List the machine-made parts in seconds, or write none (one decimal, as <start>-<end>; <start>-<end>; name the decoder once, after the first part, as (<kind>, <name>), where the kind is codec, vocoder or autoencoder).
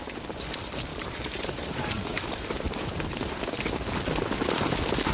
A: 0.9-4.0 (vocoder, BigVGAN v2)